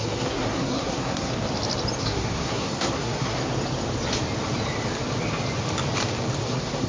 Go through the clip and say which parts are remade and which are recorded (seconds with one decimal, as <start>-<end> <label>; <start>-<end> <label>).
0.0-1.3 remade; 1.3-2.0 recorded; 2.0-3.4 remade; 3.4-6.4 recorded; 6.4-6.9 remade